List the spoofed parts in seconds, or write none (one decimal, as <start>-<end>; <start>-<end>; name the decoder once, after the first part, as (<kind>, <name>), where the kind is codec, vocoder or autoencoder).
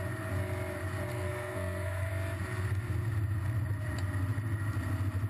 1.1-2.1 (codec, SNAC)